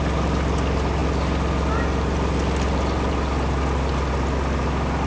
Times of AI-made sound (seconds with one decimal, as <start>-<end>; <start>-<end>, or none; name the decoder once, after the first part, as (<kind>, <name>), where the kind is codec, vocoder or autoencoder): none